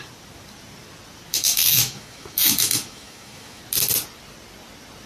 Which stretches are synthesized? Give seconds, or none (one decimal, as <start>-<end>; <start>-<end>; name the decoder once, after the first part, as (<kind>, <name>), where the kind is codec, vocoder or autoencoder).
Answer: 1.3-3.6 (autoencoder, DAC-VAE)